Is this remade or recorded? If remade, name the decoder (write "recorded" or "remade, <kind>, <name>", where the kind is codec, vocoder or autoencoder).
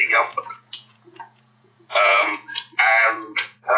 remade, vocoder, Vocos